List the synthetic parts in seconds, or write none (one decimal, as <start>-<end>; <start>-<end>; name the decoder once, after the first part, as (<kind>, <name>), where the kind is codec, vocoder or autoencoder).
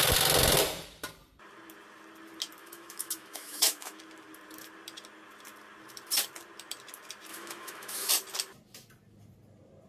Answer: 2.6-4.0 (autoencoder, DAC-VAE); 7.3-8.1